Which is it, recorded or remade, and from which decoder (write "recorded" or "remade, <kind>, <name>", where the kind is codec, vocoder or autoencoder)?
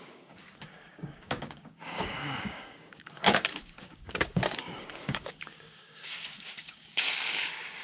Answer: remade, codec, DAC